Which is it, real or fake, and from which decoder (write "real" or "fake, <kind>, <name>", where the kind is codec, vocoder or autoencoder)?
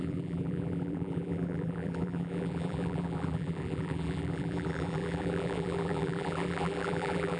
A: fake, vocoder, BigVGAN v2